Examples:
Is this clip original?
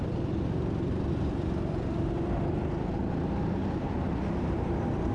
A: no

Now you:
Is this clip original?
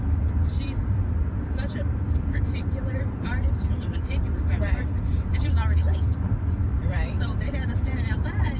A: no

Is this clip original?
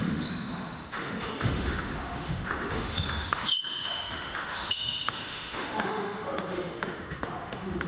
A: no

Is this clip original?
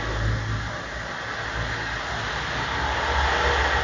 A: yes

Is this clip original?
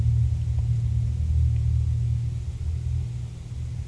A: yes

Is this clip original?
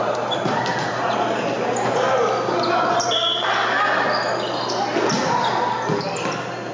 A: yes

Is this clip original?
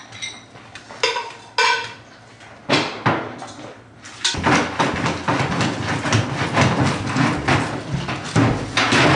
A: yes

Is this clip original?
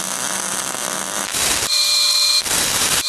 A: no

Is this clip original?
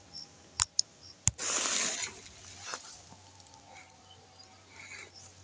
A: yes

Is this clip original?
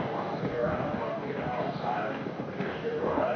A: no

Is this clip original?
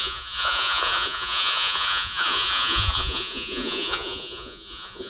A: no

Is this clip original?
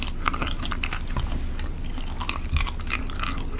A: yes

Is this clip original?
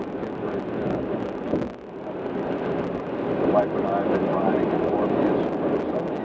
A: yes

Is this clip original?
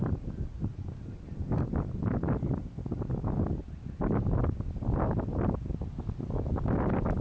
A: yes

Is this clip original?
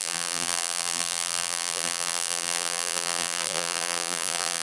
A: no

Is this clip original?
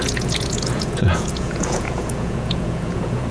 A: no